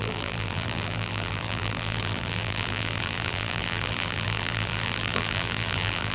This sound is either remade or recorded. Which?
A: remade